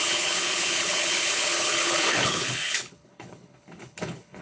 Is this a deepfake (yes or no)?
yes